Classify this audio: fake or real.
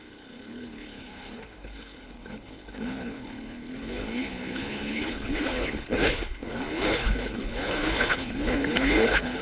fake